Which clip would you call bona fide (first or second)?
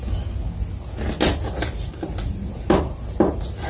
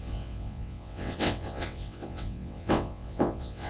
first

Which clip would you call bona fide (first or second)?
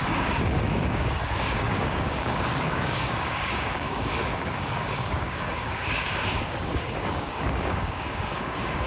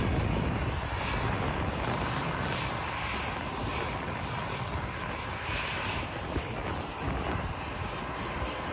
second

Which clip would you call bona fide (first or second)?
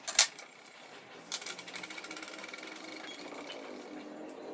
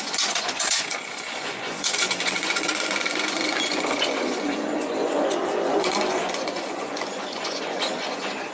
first